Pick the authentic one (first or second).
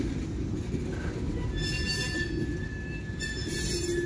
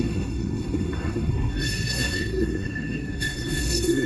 first